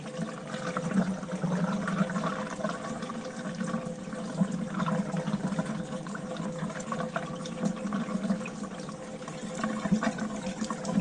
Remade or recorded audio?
recorded